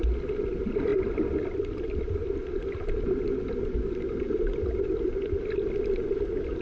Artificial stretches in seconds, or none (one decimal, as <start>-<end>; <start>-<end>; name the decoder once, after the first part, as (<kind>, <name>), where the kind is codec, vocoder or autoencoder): none